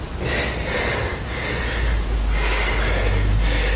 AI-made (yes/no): no